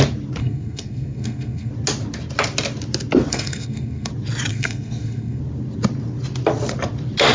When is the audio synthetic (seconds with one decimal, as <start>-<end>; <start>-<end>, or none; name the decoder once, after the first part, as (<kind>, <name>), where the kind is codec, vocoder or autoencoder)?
0.4-1.7 (codec, SNAC); 3.3-4.1; 4.5-5.4